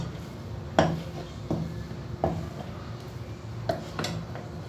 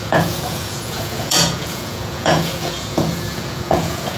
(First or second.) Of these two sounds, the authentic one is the first